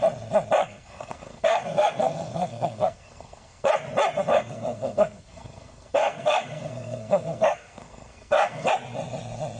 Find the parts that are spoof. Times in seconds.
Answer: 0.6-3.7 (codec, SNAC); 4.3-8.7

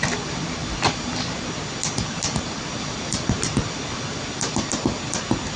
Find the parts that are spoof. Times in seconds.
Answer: none